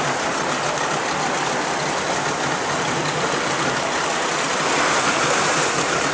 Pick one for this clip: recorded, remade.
recorded